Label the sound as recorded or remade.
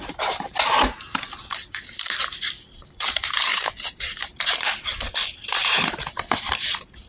remade